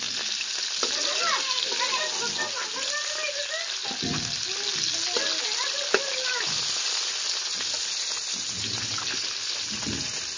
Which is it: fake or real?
real